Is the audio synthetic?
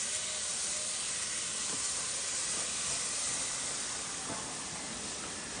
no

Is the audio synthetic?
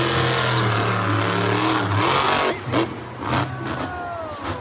no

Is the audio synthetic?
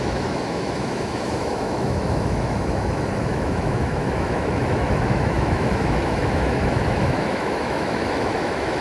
yes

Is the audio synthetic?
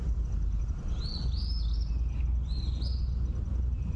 no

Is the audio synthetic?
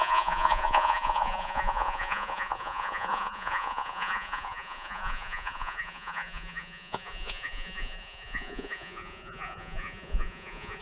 yes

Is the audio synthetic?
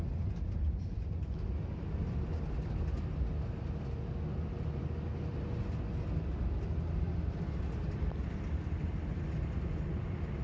no